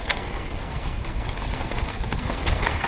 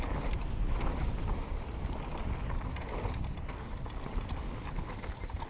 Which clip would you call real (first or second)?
second